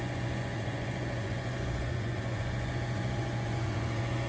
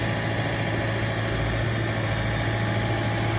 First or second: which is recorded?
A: second